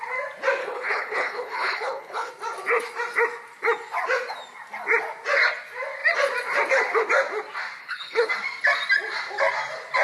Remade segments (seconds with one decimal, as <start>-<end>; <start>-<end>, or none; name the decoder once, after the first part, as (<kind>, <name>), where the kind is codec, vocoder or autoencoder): 0.6-2.3 (codec, HILCodec); 7.8-8.3